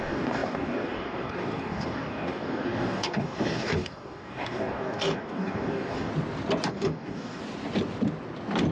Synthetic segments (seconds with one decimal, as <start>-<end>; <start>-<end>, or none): 0.0-6.1; 6.7-7.4